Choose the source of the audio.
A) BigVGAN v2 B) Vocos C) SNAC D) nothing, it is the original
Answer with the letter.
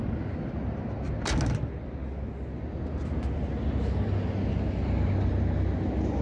D